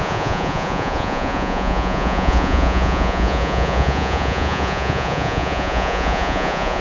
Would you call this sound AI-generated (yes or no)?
yes